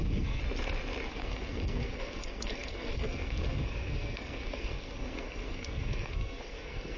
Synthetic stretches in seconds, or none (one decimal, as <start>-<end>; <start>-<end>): 0.0-0.4; 1.1-7.0